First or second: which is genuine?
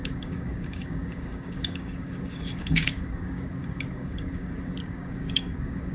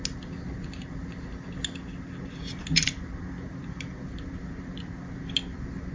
second